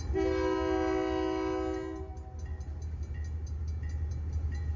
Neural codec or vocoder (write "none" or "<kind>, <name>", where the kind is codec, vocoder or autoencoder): none